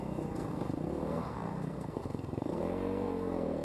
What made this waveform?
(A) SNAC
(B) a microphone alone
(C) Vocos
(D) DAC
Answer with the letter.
A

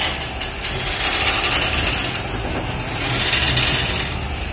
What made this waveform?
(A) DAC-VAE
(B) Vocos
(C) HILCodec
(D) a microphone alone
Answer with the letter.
D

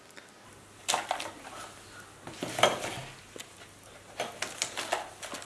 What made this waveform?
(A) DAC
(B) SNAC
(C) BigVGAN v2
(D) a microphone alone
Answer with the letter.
D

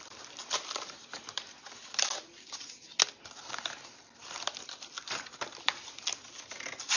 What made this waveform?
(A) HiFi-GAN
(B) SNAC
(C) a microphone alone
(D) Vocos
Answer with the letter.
C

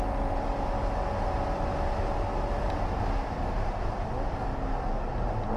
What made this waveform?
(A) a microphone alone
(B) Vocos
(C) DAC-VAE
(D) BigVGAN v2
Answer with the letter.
A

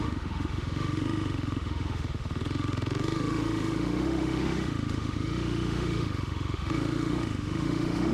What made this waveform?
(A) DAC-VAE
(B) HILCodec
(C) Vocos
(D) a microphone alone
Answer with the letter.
A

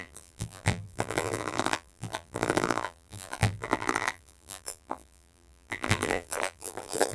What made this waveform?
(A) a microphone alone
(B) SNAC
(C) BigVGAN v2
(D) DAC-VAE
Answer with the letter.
C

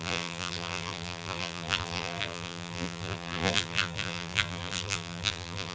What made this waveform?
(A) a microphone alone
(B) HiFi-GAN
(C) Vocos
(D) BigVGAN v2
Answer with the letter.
D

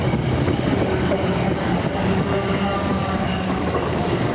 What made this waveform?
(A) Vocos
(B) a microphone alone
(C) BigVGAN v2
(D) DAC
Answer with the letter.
D